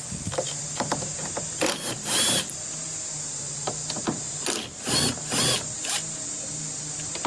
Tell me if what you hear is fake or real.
real